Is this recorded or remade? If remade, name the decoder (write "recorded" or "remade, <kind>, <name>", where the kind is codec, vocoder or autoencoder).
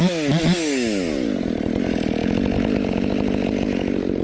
recorded